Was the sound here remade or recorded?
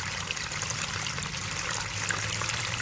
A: recorded